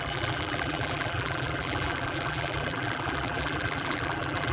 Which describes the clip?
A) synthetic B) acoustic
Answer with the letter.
A